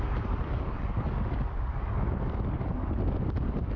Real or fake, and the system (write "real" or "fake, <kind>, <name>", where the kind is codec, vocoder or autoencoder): fake, codec, DAC